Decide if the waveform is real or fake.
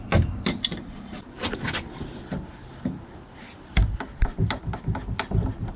real